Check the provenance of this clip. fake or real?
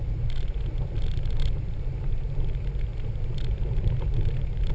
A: real